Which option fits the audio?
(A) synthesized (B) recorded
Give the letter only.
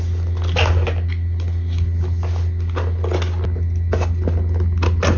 B